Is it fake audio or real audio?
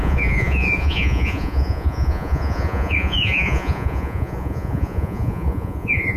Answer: fake